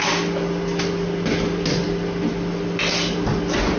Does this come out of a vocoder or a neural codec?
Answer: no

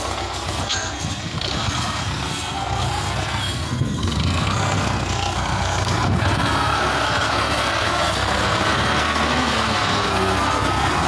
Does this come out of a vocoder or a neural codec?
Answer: yes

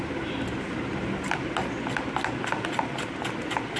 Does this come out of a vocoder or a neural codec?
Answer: no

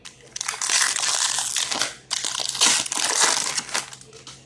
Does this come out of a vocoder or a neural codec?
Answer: no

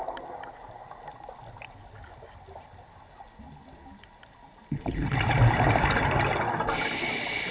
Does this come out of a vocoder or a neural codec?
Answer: no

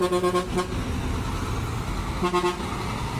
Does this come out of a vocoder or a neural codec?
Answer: no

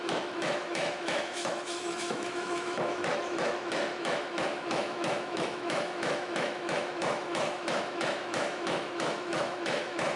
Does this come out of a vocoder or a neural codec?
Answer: yes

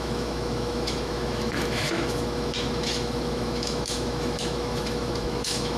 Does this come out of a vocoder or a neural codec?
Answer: yes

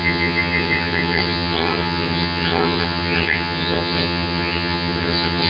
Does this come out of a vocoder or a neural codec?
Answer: yes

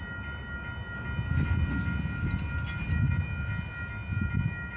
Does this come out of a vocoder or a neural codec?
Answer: no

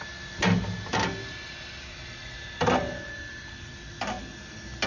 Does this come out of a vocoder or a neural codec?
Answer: no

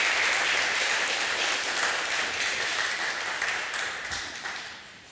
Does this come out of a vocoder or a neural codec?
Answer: yes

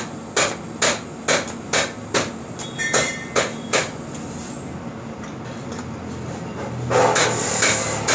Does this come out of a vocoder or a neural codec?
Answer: no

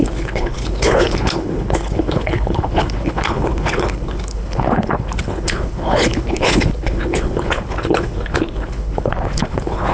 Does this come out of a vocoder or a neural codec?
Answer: yes